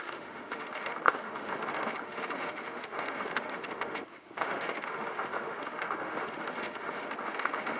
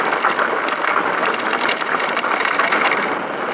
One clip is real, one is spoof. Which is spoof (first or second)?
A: first